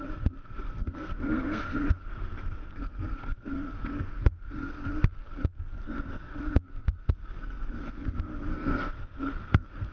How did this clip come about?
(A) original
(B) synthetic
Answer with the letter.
B